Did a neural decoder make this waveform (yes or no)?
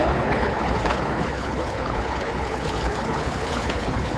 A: yes